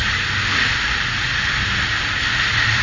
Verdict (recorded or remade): recorded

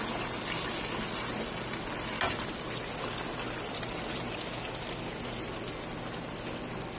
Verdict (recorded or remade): recorded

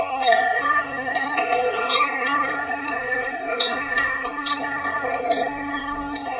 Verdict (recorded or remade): remade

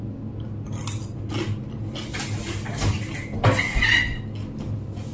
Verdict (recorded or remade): recorded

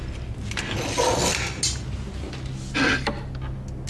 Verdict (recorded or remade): recorded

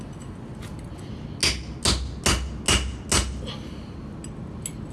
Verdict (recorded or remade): recorded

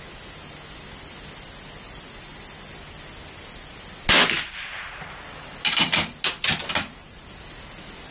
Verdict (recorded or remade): recorded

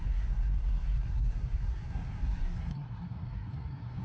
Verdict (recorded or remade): remade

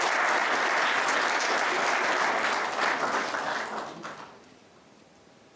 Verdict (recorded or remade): recorded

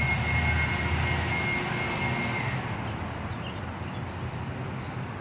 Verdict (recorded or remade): recorded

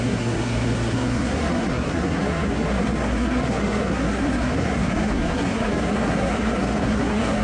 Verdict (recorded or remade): remade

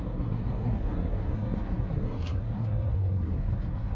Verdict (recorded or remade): remade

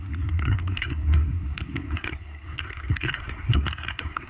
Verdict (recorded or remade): remade